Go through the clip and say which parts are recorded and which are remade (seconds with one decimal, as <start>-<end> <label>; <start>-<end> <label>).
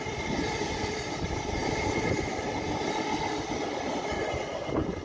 0.0-5.0 recorded